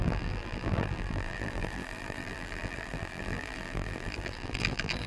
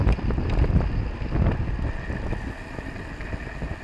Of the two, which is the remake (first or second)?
first